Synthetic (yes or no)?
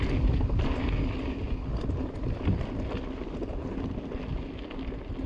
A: no